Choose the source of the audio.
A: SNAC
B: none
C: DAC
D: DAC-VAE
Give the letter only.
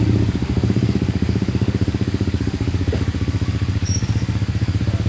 C